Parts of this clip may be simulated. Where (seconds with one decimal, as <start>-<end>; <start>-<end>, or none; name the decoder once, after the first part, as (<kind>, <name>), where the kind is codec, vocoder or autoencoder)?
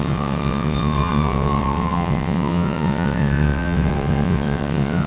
0.0-5.1 (vocoder, WaveNeXt)